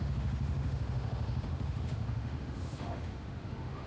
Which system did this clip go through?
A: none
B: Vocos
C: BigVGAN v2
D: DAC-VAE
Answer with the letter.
D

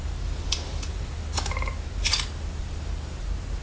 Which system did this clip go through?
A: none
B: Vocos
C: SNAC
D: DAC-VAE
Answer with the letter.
A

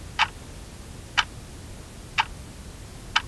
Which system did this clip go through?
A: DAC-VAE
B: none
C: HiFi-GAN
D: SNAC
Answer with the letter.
B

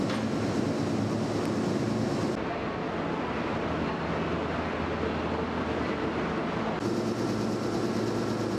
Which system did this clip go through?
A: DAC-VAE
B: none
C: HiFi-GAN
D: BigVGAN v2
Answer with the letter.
B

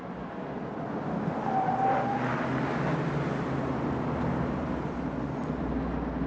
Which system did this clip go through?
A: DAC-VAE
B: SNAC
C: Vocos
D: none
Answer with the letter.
D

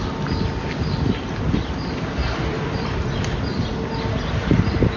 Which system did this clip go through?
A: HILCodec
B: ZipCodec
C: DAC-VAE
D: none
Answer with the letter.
D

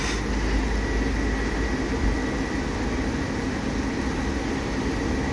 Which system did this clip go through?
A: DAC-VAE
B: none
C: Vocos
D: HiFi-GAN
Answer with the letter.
B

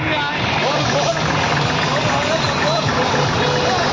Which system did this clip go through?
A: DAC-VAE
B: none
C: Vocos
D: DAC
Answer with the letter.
B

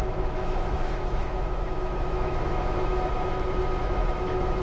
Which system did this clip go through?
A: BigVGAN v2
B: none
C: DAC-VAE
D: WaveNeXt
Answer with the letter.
C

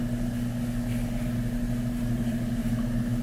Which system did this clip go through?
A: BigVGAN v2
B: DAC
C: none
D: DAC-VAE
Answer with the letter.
C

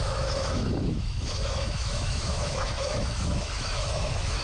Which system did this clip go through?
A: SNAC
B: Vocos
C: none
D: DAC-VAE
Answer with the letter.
D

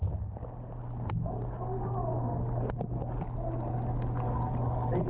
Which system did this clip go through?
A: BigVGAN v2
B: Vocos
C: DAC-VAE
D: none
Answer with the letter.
D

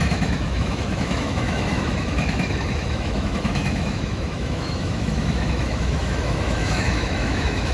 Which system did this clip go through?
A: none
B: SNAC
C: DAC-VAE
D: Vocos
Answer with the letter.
C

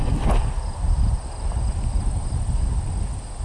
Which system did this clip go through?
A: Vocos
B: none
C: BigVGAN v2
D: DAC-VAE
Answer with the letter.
B